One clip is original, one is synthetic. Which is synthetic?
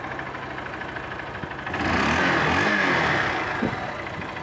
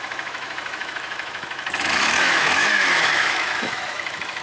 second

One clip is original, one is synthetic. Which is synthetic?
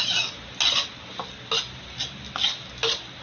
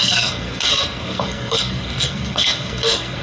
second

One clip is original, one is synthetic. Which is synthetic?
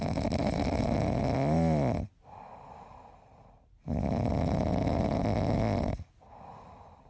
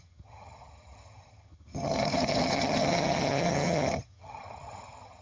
second